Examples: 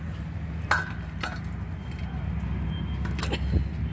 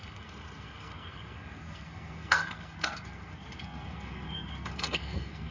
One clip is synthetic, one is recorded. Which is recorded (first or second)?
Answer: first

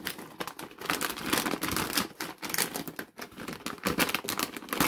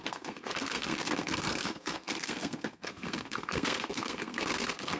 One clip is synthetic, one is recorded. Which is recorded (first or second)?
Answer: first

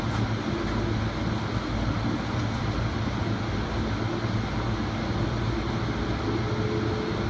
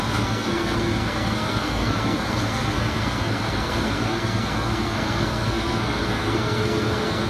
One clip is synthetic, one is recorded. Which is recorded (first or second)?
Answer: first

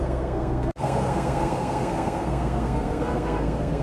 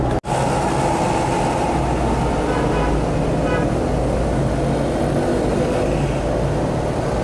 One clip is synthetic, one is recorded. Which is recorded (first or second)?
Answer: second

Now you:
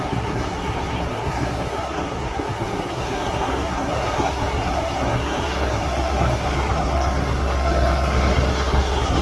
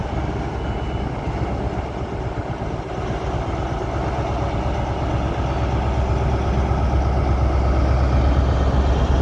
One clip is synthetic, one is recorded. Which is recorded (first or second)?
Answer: second